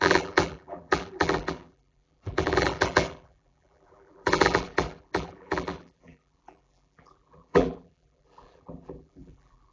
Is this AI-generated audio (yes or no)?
yes